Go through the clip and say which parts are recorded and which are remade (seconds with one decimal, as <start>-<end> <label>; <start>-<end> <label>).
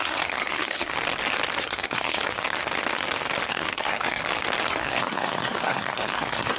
0.0-0.9 remade; 0.9-1.6 recorded; 1.6-2.2 remade; 2.2-3.5 recorded; 3.5-4.2 remade; 4.2-4.7 recorded; 4.7-6.6 remade